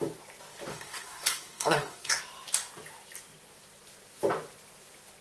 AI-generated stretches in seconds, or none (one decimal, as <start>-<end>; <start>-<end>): 0.7-2.2